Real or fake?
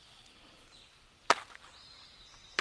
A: real